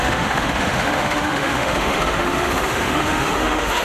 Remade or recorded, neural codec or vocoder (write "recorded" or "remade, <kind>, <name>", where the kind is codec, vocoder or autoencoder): remade, autoencoder, DAC-VAE